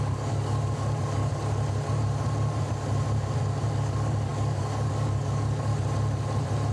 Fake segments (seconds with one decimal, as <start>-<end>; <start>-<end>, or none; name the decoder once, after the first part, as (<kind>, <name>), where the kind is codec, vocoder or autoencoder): 0.0-1.2 (codec, DAC); 3.7-5.7